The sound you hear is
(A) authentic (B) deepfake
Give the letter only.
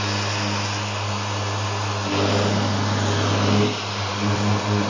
A